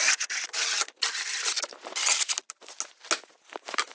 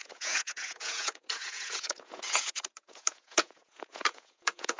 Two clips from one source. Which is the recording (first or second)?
first